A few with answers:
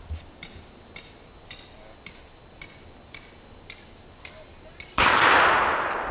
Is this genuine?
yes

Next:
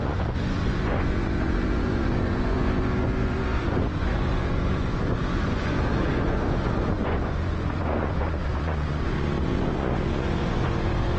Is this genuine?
no